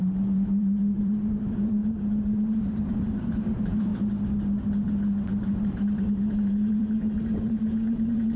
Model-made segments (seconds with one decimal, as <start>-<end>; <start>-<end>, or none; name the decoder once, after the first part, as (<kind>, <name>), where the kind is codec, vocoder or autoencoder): 0.0-3.9 (vocoder, BigVGAN v2); 5.6-8.4